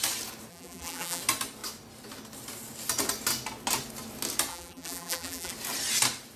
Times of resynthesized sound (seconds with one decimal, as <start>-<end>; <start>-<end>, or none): 0.5-1.2; 4.5-5.5